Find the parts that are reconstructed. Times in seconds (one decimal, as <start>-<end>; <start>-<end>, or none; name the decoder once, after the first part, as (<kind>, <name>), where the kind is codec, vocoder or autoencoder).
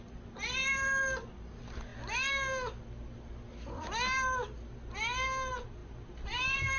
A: none